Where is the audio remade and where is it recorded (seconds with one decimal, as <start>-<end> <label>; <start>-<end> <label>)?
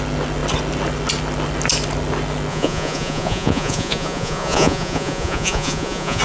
0.0-2.5 recorded; 2.5-6.2 remade